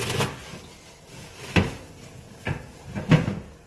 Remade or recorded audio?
recorded